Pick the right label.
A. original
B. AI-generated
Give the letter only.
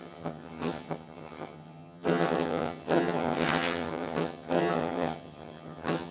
B